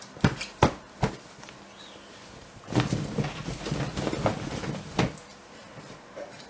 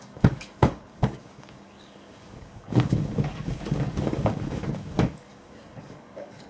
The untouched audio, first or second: first